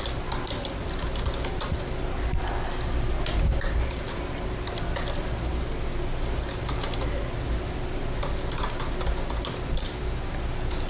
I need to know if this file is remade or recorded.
recorded